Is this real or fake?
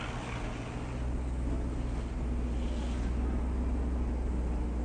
real